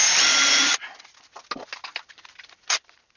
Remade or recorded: recorded